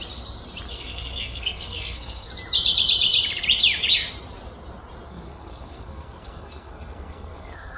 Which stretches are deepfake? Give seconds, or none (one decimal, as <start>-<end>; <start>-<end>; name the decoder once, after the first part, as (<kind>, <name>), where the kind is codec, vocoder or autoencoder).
0.7-2.3 (codec, SNAC); 5.1-7.8